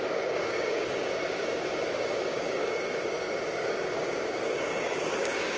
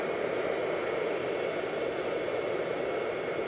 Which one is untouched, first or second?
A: second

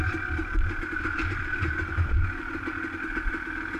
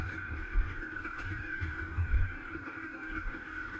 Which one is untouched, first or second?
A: first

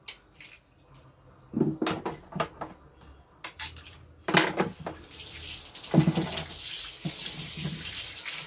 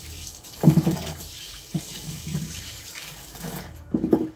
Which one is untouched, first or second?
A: first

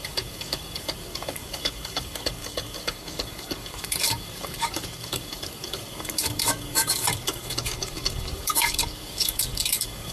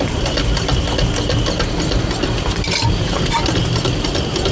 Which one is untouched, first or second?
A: second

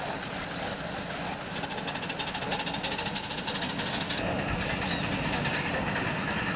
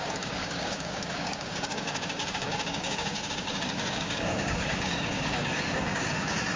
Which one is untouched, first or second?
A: first